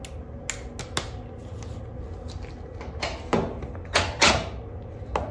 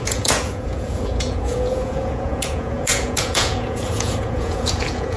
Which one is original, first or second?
first